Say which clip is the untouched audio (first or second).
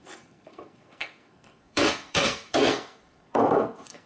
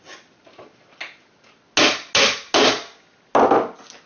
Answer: second